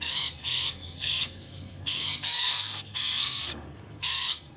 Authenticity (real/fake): fake